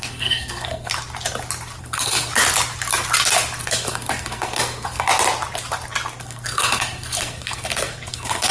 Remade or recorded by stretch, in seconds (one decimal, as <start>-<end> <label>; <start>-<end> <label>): 0.0-0.9 remade; 0.9-1.8 recorded; 1.8-2.3 remade; 2.3-3.6 recorded; 3.6-5.1 remade; 5.1-6.2 recorded; 6.2-8.5 remade